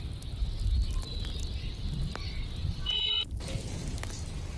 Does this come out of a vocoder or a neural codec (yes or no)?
no